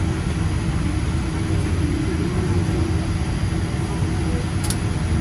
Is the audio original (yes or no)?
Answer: yes